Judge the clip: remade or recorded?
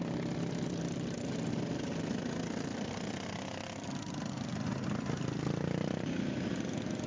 recorded